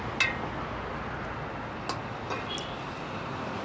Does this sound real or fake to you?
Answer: real